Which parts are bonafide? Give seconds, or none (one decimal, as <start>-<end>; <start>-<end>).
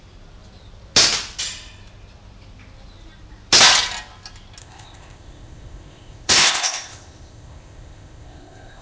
0.0-4.6